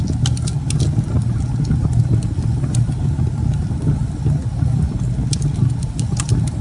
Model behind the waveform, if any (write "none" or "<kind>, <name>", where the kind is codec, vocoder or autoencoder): none